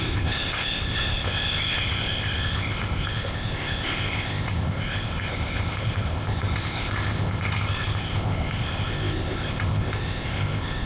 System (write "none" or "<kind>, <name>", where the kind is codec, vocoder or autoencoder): codec, ZipCodec